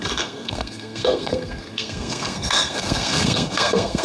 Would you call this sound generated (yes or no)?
yes